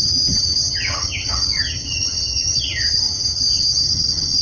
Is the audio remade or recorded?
remade